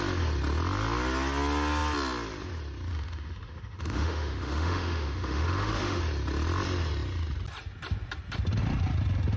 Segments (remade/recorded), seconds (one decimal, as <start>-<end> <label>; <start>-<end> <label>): 0.0-2.9 recorded; 2.9-6.0 remade; 6.0-9.4 recorded

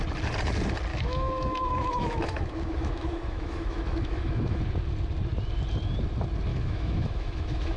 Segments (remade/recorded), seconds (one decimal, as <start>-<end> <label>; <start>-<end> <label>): 0.0-0.9 recorded; 0.9-4.6 remade; 4.6-6.5 recorded; 6.5-7.8 remade

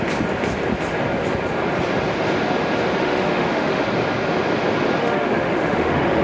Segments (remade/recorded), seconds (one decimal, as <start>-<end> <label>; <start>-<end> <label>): 0.0-3.0 recorded; 3.0-3.8 remade; 3.8-5.0 recorded; 5.0-6.2 remade

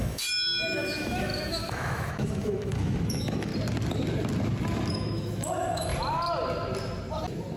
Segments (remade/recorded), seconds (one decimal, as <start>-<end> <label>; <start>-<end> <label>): 0.0-3.5 remade; 3.5-4.9 recorded; 4.9-5.9 remade; 5.9-7.6 recorded

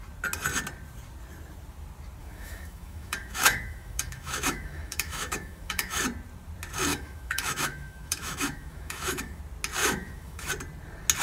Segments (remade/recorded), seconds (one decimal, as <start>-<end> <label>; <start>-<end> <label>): 0.0-2.2 recorded; 2.2-6.0 remade; 6.0-6.9 recorded; 6.9-9.4 remade; 9.4-9.8 recorded; 9.8-10.5 remade; 10.5-11.2 recorded

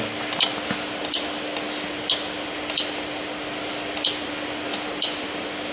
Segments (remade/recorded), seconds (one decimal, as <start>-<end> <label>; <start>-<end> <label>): 0.0-5.7 recorded